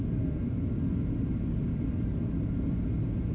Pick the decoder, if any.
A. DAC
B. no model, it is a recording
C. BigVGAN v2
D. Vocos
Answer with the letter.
B